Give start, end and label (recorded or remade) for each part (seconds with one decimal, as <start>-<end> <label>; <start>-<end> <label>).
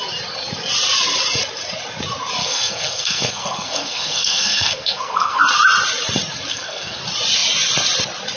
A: 0.0-2.4 recorded; 2.4-5.4 remade; 5.4-6.5 recorded; 6.5-7.0 remade; 7.0-8.4 recorded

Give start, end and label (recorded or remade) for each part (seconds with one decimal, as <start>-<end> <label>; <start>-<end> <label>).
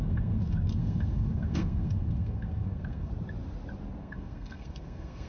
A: 0.0-3.1 remade; 3.1-4.0 recorded; 4.0-5.3 remade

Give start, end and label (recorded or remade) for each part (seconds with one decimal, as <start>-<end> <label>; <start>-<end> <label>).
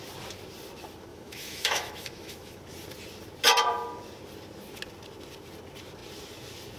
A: 0.0-1.1 recorded; 1.1-2.6 remade; 2.6-6.8 recorded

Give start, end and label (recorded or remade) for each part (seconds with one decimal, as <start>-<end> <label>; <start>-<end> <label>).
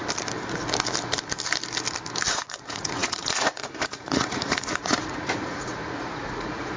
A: 0.0-2.3 recorded; 2.3-6.8 remade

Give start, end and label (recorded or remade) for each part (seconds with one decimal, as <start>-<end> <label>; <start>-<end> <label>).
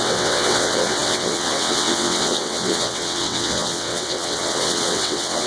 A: 0.0-5.5 remade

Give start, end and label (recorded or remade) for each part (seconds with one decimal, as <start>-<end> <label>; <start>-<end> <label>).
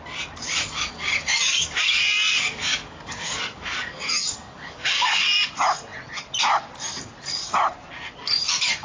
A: 0.0-0.6 recorded; 0.6-5.5 remade; 5.5-8.8 recorded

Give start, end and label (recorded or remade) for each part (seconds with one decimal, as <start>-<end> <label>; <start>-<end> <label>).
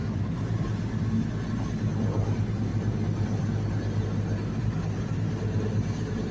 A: 0.0-0.6 remade; 0.6-2.7 recorded; 2.7-3.6 remade; 3.6-6.3 recorded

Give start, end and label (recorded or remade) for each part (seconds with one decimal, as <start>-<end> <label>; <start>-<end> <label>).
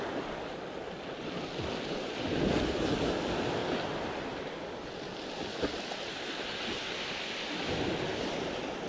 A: 0.0-3.6 recorded; 3.6-7.2 remade; 7.2-8.9 recorded